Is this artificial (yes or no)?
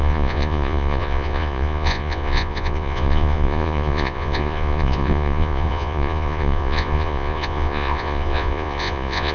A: yes